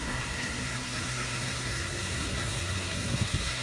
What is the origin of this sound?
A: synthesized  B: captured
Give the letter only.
A